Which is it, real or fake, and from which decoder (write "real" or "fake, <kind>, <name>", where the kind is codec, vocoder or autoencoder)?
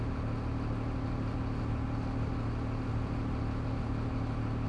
real